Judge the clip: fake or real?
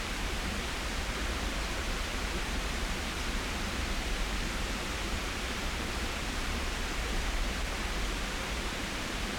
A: fake